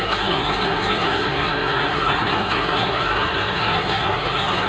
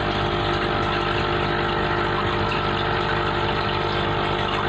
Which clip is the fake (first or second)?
first